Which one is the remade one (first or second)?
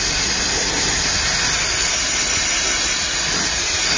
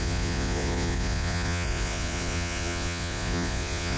second